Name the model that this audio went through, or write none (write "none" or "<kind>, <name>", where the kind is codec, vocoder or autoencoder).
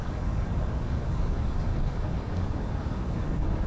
codec, DAC